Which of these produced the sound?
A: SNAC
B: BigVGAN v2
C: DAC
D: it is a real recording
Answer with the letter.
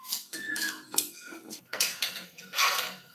A